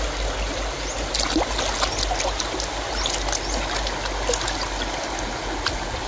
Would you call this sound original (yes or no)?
yes